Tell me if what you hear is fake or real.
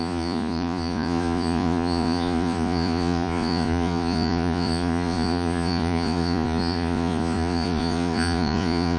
fake